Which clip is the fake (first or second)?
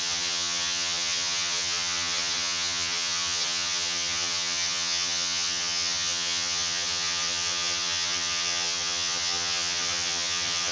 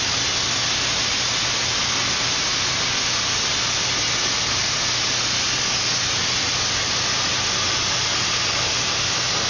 first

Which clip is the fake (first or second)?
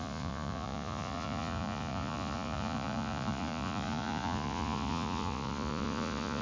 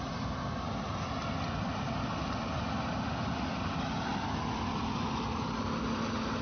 first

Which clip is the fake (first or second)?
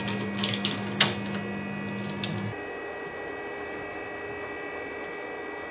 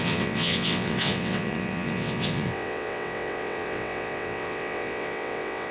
second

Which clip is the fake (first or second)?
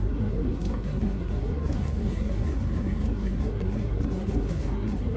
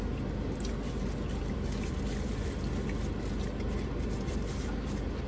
first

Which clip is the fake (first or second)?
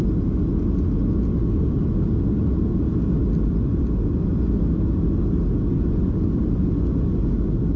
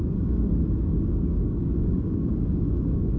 second